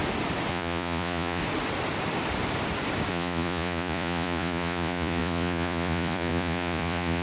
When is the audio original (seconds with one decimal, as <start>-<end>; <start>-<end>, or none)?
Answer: 0.0-0.5; 1.4-3.1